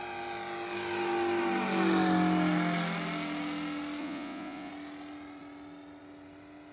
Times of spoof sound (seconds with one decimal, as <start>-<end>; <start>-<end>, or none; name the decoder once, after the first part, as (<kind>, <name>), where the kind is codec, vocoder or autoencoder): 4.0-4.7 (vocoder, Vocos)